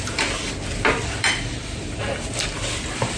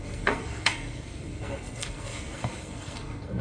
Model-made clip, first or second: second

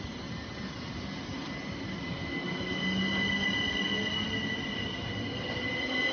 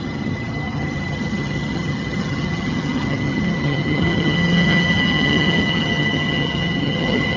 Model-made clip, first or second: second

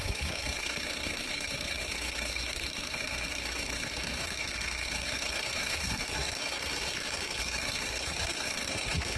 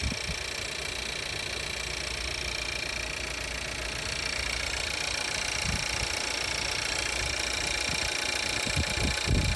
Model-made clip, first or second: first